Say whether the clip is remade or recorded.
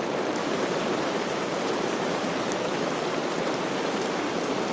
remade